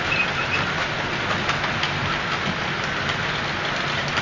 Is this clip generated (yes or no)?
no